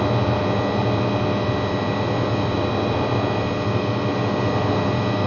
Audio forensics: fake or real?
real